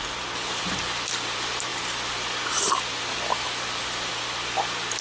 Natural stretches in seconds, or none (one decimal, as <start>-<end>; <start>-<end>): 0.6-1.7; 4.1-5.0